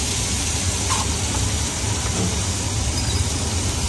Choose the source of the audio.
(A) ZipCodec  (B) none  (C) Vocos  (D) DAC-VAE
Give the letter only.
B